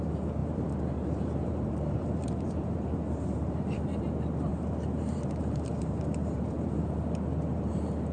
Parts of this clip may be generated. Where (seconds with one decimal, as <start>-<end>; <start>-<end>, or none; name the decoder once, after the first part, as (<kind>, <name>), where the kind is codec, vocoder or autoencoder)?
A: 0.4-4.0 (vocoder, BigVGAN v2); 4.5-6.8